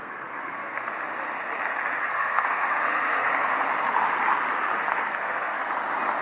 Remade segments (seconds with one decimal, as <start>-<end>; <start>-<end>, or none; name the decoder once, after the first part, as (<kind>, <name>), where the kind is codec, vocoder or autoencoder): 0.0-0.9 (codec, SNAC); 2.0-3.3; 4.9-5.7